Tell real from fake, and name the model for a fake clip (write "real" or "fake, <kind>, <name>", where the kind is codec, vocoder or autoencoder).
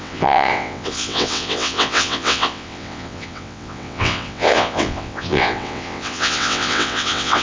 fake, vocoder, WaveNeXt